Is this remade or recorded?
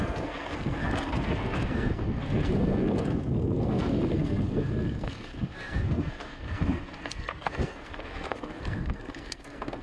remade